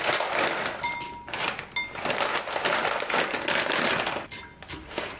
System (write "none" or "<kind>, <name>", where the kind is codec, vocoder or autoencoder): none